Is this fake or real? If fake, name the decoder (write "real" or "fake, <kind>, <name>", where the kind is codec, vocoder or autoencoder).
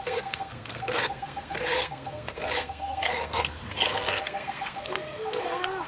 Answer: fake, codec, SNAC